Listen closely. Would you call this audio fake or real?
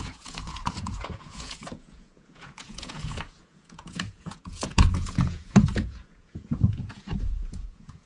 fake